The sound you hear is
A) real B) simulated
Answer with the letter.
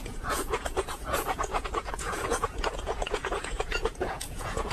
B